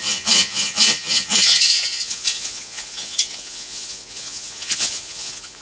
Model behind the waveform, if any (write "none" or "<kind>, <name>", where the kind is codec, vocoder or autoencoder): vocoder, Vocos